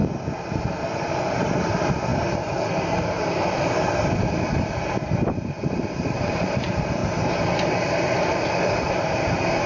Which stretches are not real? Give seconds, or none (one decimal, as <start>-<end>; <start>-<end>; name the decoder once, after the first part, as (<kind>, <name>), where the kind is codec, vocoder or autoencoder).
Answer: 0.6-7.0 (vocoder, BigVGAN v2); 7.7-9.7